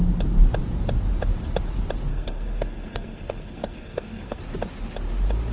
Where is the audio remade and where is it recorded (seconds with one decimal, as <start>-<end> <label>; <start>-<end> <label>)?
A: 0.0-2.1 recorded; 2.1-4.4 remade; 4.4-5.5 recorded